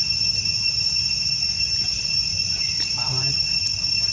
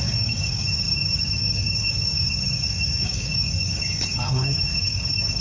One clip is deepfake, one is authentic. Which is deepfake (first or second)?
second